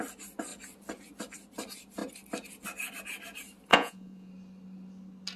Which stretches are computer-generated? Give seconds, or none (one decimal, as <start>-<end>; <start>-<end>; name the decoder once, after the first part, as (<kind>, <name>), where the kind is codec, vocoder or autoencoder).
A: 3.7-4.3 (vocoder, Vocos)